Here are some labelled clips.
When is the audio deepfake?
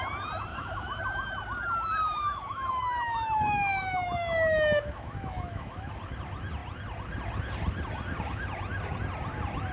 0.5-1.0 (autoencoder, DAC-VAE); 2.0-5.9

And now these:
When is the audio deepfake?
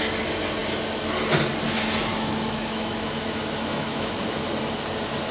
2.1-4.4 (autoencoder, DAC-VAE)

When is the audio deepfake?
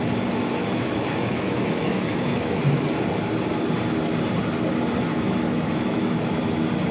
0.6-2.9 (autoencoder, DAC-VAE); 5.1-6.4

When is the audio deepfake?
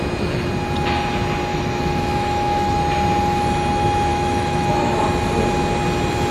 1.5-2.8 (autoencoder, DAC-VAE); 4.1-5.0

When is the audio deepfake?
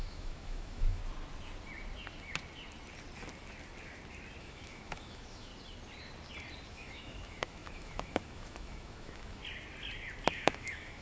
0.0-1.0 (autoencoder, DAC-VAE); 4.4-5.5; 6.7-9.4; 10.3-11.0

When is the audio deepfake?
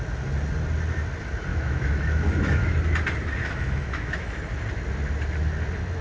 1.5-2.8 (autoencoder, DAC-VAE); 3.4-4.4